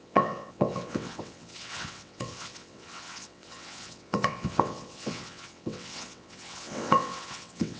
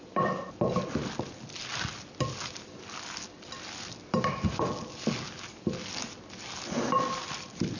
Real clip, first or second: second